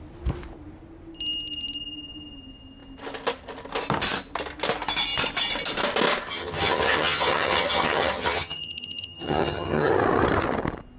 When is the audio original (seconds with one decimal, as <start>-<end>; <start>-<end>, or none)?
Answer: 0.0-6.3; 9.9-11.0